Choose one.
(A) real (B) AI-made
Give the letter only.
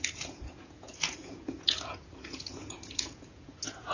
B